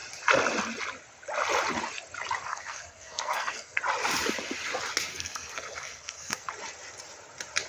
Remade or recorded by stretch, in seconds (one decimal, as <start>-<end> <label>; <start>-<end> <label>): 0.0-2.4 recorded; 2.4-3.8 remade; 3.8-5.1 recorded; 5.1-6.5 remade; 6.5-7.7 recorded